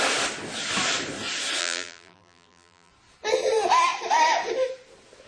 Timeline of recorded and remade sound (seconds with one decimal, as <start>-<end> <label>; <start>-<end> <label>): 0.0-1.6 recorded; 1.6-2.9 remade; 2.9-5.3 recorded

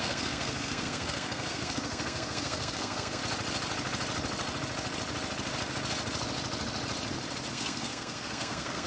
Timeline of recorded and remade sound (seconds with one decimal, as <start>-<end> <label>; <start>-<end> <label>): 0.0-3.2 remade; 3.2-7.5 recorded; 7.5-8.9 remade

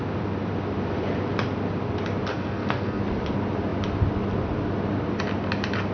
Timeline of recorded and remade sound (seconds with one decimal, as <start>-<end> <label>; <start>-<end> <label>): 0.0-2.3 recorded; 2.3-3.0 remade; 3.0-5.9 recorded

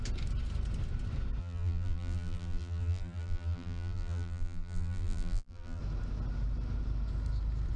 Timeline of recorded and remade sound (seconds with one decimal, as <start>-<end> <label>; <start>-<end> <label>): 0.0-1.4 recorded; 1.4-5.8 remade; 5.8-7.8 recorded

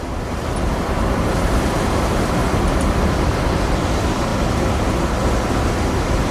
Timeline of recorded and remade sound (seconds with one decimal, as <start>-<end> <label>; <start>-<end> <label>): 0.0-6.3 recorded

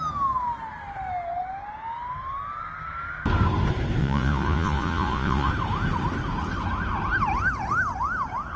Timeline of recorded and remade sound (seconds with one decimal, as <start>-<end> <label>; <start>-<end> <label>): 0.0-4.0 recorded; 4.0-5.5 remade; 5.5-8.6 recorded